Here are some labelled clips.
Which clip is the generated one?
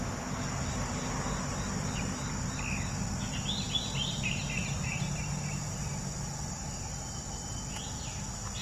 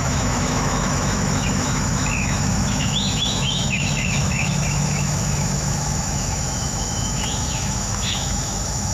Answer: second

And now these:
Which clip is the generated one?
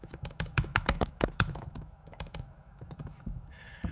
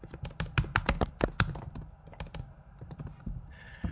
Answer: first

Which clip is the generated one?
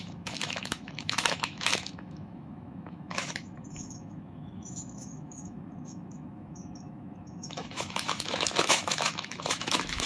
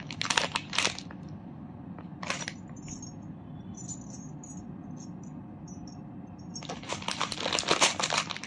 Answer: first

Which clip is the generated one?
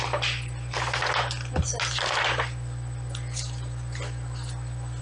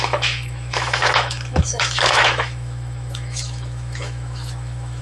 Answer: second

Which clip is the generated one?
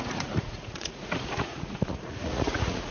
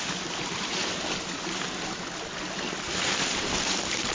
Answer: first